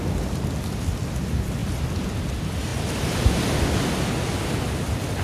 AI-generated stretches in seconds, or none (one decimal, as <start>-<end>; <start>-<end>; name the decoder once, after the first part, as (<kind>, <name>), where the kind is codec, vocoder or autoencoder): none